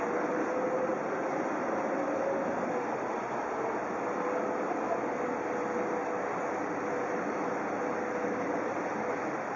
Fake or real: real